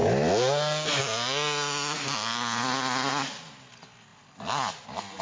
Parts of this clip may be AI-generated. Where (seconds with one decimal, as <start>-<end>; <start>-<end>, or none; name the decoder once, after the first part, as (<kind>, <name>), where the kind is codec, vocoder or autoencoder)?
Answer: none